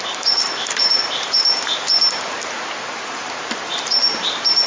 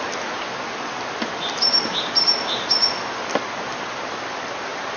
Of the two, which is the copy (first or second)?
first